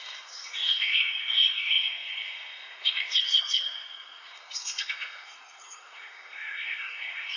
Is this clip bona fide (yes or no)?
no